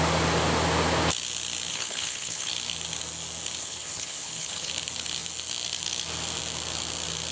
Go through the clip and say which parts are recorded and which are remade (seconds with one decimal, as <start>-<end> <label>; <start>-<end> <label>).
0.0-1.7 recorded; 1.7-2.5 remade; 2.5-3.6 recorded; 3.6-4.7 remade; 4.7-7.3 recorded